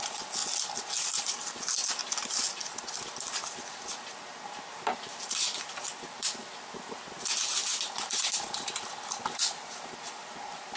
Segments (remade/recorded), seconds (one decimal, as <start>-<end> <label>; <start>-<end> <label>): 0.0-10.8 recorded

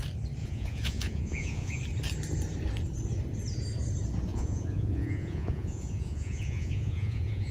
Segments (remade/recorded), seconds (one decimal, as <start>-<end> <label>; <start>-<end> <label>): 0.0-0.4 recorded; 0.4-1.8 remade; 1.8-4.3 recorded; 4.3-7.5 remade

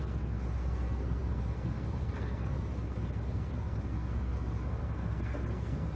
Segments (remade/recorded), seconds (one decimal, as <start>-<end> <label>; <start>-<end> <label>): 0.0-6.0 remade